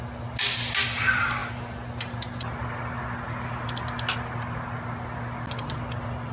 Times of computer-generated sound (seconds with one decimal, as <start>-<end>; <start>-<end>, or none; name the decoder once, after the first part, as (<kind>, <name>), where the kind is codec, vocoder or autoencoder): none